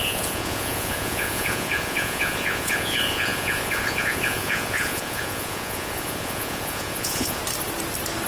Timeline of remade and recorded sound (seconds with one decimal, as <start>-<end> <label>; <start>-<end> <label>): 0.0-7.4 remade; 7.4-8.3 recorded